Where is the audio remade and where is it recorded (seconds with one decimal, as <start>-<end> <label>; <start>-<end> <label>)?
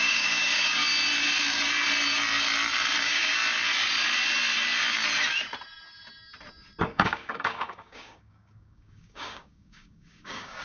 0.0-0.8 remade; 0.8-3.0 recorded; 3.0-3.4 remade; 3.4-6.8 recorded; 6.8-10.6 remade